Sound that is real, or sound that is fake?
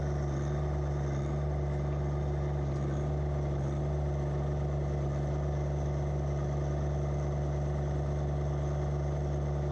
real